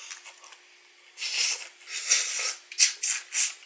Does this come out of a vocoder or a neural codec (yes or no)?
no